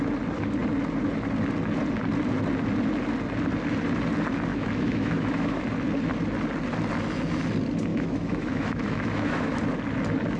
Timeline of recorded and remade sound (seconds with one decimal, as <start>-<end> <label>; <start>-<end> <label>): 0.0-4.5 recorded; 4.5-5.6 remade; 5.6-7.9 recorded; 7.9-9.6 remade; 9.6-10.4 recorded